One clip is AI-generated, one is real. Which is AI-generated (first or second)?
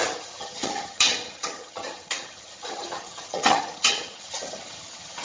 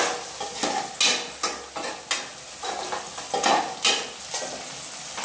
first